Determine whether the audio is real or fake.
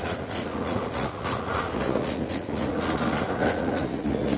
fake